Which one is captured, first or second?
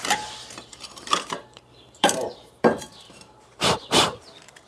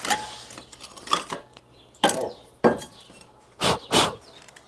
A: second